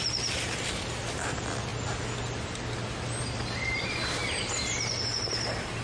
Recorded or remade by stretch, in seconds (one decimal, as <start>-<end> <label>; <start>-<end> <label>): 0.0-1.7 remade; 1.7-3.2 recorded; 3.2-5.8 remade